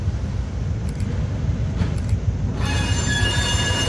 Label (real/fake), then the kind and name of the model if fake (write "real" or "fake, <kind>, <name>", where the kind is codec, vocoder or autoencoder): real